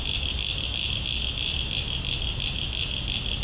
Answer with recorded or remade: recorded